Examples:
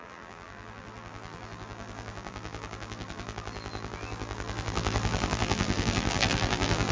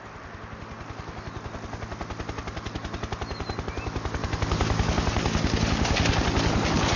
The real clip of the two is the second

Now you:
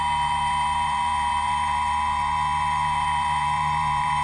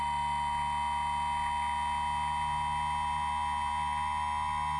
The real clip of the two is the second